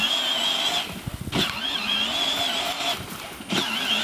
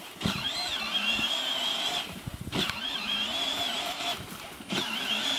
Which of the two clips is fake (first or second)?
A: second